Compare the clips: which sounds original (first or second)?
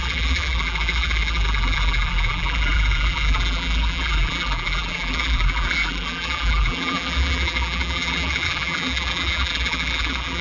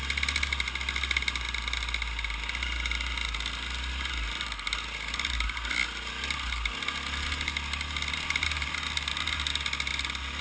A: second